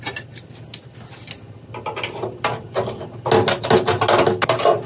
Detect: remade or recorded recorded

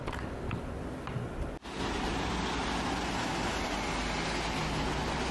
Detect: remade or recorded recorded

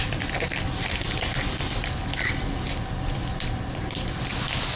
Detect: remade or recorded recorded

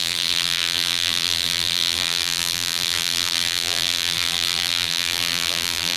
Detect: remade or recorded remade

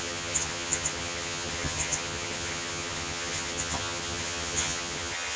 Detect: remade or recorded remade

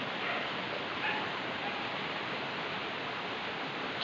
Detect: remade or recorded recorded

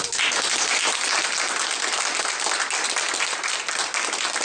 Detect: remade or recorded recorded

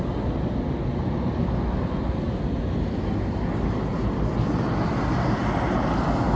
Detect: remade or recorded recorded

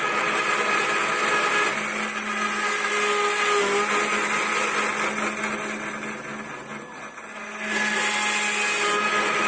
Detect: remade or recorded recorded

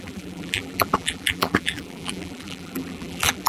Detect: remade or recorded remade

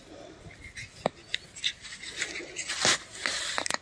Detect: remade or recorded recorded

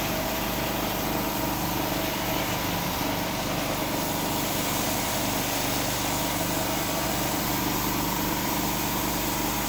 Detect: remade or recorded remade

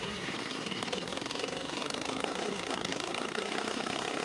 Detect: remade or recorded remade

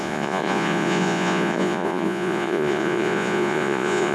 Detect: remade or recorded remade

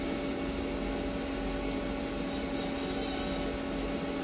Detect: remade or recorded recorded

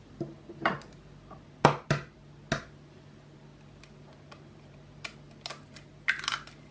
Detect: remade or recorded recorded